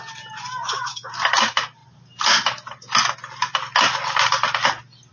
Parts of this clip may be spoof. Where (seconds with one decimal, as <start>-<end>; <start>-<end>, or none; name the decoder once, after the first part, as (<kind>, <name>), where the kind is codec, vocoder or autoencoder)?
0.5-1.1 (autoencoder, DAC-VAE)